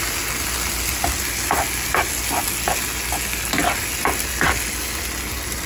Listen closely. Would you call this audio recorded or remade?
recorded